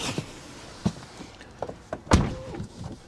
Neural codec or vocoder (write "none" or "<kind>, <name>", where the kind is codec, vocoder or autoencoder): vocoder, BigVGAN v2